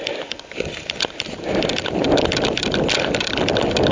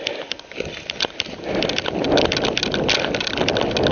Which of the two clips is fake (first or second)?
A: first